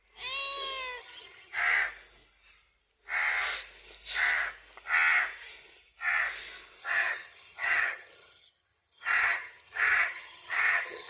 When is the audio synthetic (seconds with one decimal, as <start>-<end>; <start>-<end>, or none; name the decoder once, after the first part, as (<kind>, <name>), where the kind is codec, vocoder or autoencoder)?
1.0-1.6 (vocoder, HiFi-GAN); 6.8-11.1